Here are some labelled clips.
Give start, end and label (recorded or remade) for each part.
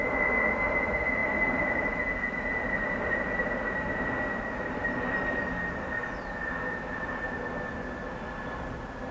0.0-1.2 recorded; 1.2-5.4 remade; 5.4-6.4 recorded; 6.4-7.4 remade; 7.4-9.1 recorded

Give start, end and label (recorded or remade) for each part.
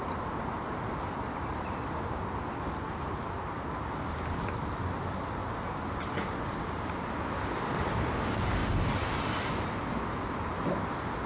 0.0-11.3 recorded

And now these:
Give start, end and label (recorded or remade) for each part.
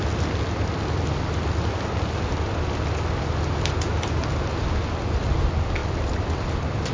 0.0-6.9 recorded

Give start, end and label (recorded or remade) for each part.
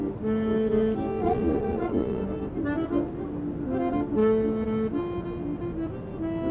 0.0-1.2 recorded; 1.2-2.2 remade; 2.2-6.5 recorded